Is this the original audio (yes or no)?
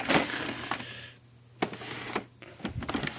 yes